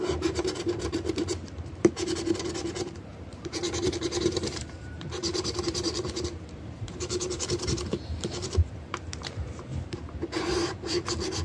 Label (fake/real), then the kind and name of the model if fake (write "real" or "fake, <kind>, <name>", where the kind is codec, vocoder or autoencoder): fake, vocoder, BigVGAN v2